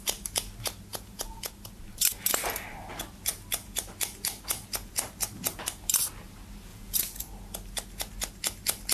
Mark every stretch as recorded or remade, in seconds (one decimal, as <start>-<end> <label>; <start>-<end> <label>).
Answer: 0.0-0.9 recorded; 0.9-1.5 remade; 1.5-6.7 recorded; 6.7-7.2 remade; 7.2-8.9 recorded